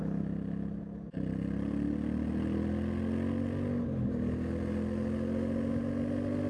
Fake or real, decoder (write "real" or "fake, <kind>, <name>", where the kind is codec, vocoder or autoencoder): real